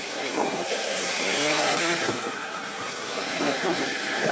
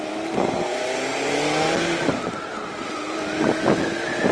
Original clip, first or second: second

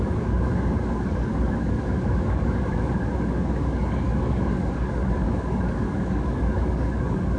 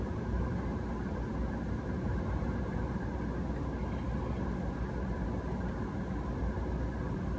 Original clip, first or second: second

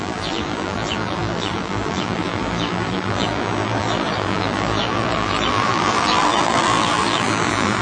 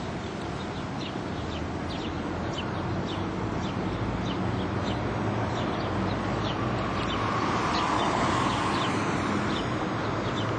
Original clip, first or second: second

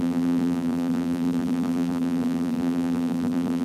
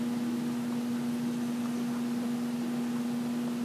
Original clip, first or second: second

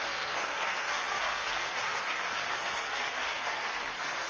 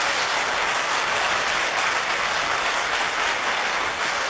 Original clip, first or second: second